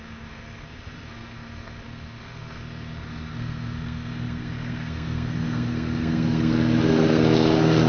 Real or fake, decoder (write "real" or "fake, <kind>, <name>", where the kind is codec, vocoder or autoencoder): fake, codec, SNAC